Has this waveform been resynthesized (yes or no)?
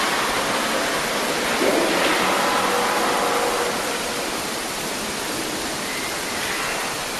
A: no